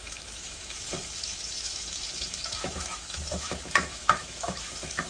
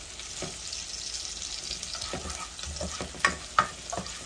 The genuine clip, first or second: second